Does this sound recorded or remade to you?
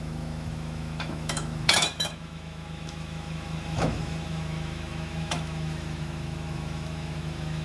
remade